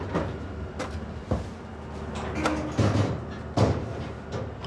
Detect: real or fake real